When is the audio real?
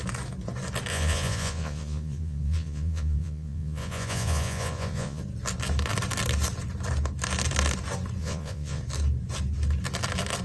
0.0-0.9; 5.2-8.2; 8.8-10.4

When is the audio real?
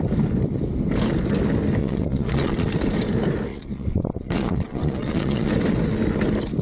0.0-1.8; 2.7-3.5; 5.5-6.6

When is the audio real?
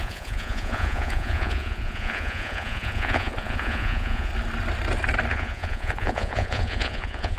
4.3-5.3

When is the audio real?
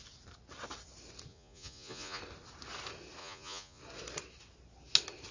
0.0-1.3; 2.2-3.2; 3.8-5.3